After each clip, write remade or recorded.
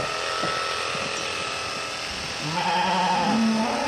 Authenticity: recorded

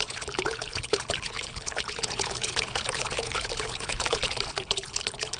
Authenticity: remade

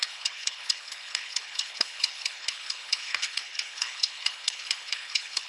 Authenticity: remade